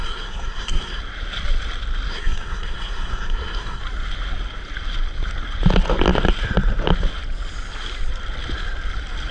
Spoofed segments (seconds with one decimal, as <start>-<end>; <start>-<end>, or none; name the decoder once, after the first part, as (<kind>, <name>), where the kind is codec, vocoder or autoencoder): 0.0-1.0 (codec, SNAC); 2.1-3.8